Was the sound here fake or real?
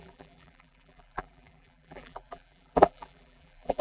fake